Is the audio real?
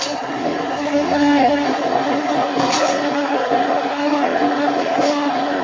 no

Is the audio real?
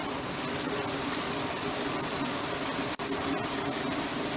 yes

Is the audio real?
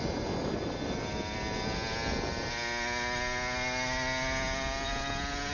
yes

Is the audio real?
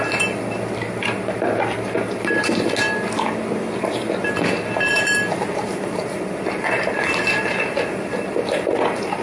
yes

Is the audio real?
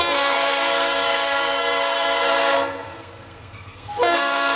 no